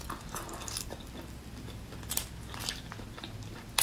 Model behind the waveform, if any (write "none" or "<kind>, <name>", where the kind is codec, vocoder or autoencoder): none